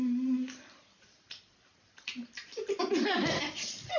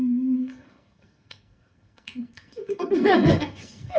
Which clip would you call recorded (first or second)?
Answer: first